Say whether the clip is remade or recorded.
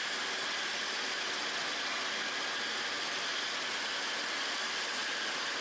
recorded